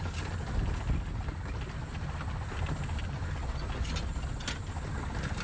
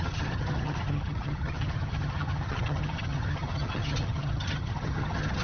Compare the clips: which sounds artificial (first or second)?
second